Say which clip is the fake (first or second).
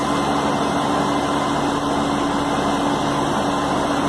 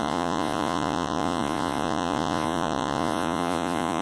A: second